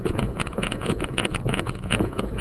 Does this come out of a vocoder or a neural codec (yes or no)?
yes